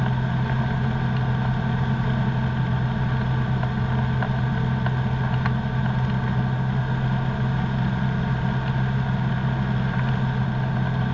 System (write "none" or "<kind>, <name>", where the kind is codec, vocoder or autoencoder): none